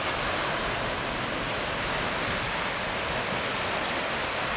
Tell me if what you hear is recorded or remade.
recorded